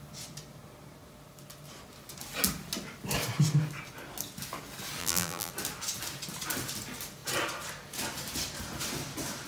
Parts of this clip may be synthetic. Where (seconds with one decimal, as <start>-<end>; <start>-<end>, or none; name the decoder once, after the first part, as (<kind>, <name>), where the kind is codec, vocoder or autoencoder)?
5.0-5.5 (vocoder, BigVGAN v2)